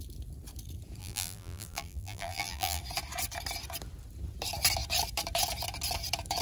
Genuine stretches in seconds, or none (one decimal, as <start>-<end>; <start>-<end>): 0.0-1.0; 2.8-6.4